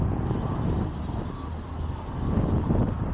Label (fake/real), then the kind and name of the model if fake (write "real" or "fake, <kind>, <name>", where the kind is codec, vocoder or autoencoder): real